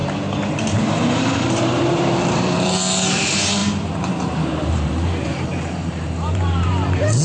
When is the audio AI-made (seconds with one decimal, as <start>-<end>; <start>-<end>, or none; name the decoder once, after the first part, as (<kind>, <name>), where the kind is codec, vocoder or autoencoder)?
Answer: 0.5-7.2 (vocoder, BigVGAN v2)